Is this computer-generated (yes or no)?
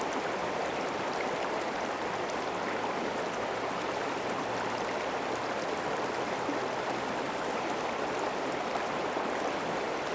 no